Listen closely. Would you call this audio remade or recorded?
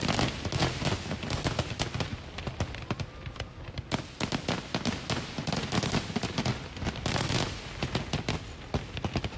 recorded